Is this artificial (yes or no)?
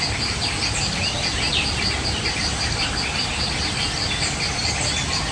no